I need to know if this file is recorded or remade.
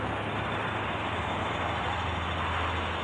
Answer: recorded